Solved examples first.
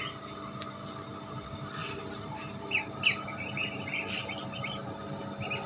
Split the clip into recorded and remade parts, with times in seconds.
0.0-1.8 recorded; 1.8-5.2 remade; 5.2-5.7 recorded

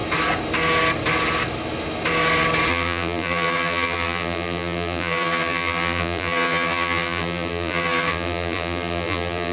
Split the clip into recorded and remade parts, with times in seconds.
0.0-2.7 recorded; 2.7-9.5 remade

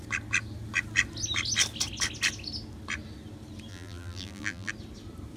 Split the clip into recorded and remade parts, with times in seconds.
0.0-3.7 recorded; 3.7-4.7 remade; 4.7-5.4 recorded